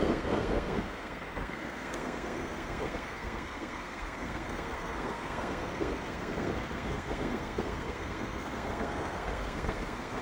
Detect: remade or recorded remade